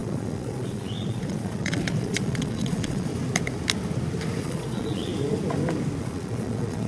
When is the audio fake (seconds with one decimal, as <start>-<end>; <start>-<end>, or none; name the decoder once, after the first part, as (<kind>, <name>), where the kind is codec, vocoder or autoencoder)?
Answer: 0.0-3.1 (vocoder, Vocos); 4.4-5.1; 6.0-6.9